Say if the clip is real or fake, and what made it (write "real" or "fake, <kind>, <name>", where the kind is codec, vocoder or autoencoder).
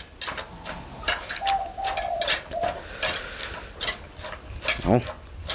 real